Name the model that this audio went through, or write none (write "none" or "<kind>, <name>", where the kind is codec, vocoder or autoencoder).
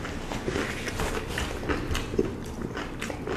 none